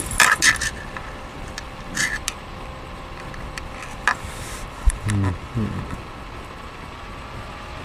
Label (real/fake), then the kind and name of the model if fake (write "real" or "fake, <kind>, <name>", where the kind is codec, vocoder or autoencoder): real